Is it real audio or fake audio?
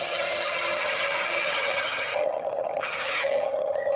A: fake